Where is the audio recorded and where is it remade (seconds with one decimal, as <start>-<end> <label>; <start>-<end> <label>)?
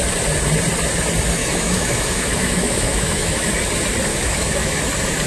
0.0-1.4 recorded; 1.4-3.5 remade; 3.5-4.1 recorded; 4.1-4.8 remade; 4.8-5.3 recorded